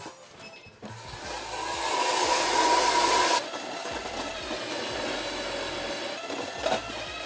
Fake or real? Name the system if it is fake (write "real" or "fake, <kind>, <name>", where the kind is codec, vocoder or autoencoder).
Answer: real